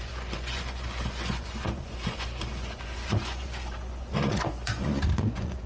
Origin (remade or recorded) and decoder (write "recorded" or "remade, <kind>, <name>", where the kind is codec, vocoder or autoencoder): remade, vocoder, Vocos